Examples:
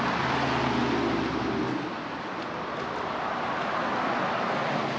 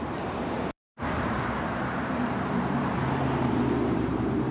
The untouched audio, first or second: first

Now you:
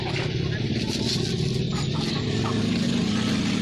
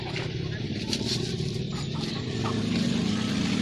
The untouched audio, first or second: first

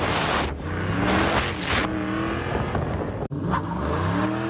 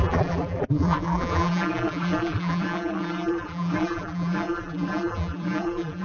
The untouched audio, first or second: first